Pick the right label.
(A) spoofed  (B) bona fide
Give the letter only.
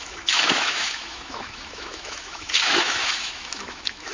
A